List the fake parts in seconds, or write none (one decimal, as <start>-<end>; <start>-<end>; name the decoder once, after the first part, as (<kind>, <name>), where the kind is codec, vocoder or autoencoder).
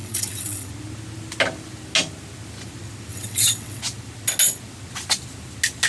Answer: 0.0-0.7 (vocoder, WaveNeXt); 3.1-3.8